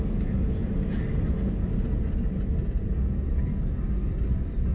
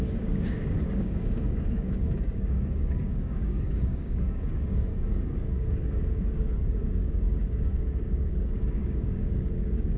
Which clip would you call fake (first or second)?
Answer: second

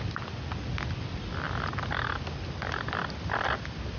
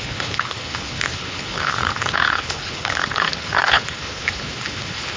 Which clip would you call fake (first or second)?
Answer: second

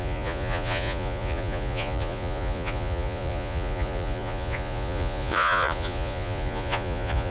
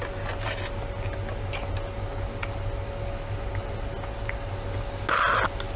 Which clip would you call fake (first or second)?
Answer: first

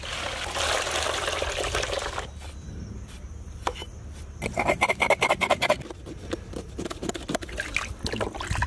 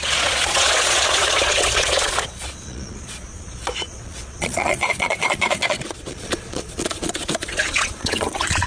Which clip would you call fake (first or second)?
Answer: second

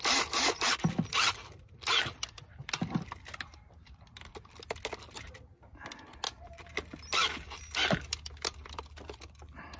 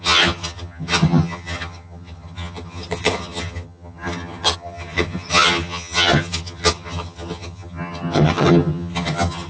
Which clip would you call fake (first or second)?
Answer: second